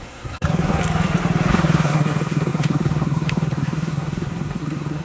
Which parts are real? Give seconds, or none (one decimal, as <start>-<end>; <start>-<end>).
0.8-1.5